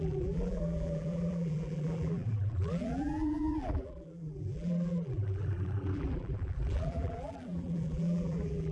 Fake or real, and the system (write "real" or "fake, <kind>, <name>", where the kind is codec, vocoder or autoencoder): fake, vocoder, BigVGAN v2